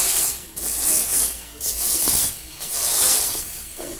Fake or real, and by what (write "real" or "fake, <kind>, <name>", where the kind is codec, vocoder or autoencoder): fake, codec, SNAC